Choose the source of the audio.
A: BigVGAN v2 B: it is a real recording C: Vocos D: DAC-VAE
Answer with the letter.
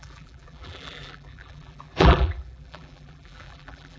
A